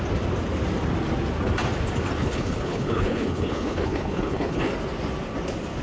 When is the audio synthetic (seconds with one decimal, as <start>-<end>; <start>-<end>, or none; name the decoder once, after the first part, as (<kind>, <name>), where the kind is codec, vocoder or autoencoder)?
2.2-4.7 (codec, HILCodec)